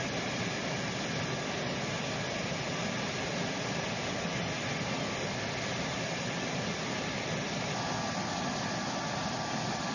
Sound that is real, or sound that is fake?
real